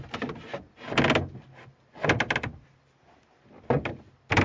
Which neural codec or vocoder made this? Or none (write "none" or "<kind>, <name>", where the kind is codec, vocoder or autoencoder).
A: none